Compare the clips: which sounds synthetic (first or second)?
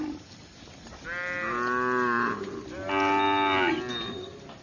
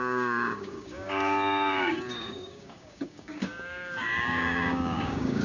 second